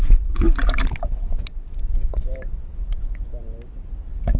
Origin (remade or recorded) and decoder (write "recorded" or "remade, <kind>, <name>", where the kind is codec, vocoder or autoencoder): recorded